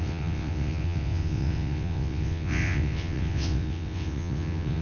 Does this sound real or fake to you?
fake